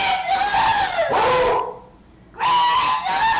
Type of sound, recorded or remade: recorded